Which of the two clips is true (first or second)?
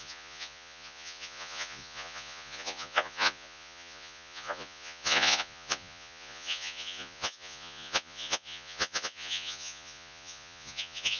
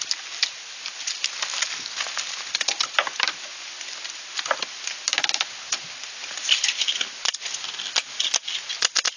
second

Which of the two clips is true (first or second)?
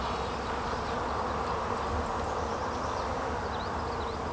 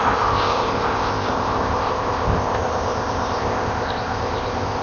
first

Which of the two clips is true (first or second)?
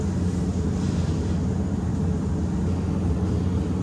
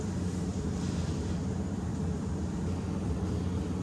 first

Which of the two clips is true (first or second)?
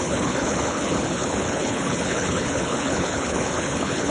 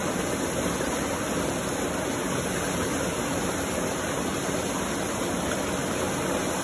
second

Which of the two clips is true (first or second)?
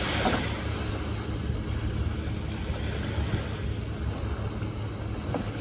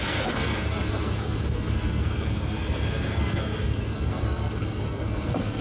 first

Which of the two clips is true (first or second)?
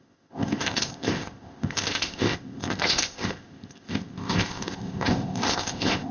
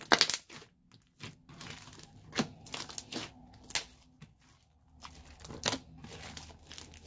second